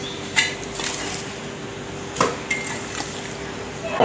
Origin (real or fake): real